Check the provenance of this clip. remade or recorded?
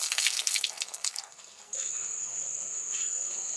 remade